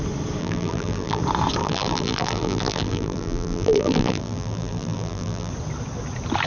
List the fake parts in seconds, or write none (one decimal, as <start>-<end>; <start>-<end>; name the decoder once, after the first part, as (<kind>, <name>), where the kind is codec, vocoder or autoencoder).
0.4-1.2 (vocoder, BigVGAN v2); 1.6-5.5